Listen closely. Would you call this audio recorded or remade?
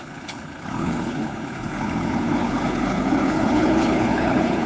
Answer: remade